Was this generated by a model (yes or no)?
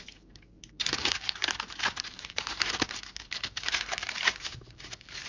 yes